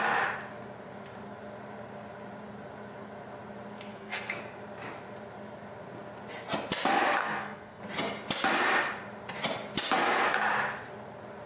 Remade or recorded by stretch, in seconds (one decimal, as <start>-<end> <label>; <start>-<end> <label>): 0.0-3.9 recorded; 3.9-4.4 remade; 4.4-7.2 recorded; 7.2-7.8 remade; 7.8-11.5 recorded